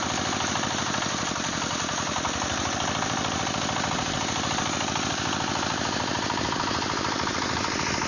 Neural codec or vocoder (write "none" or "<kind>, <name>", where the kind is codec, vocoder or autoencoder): none